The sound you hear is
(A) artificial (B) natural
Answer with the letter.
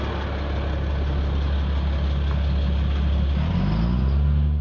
B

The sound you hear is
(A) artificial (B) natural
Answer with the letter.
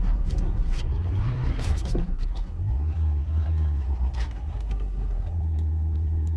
A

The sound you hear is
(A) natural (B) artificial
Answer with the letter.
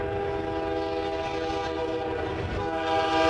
A